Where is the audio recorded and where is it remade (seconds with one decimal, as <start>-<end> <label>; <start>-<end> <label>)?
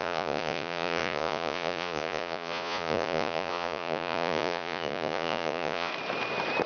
0.0-5.9 remade; 5.9-6.7 recorded